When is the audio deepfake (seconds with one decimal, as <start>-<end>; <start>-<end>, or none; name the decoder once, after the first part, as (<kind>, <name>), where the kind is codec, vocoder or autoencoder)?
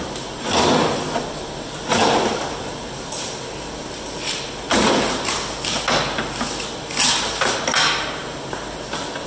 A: none